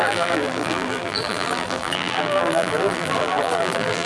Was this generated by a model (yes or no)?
yes